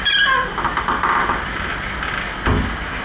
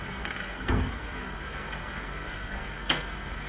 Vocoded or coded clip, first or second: second